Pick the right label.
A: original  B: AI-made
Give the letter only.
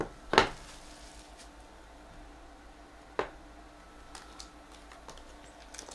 A